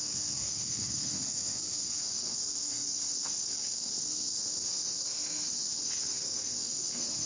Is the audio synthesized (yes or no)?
yes